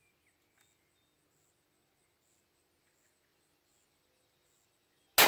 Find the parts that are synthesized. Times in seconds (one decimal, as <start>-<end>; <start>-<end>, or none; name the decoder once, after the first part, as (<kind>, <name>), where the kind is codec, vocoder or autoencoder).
none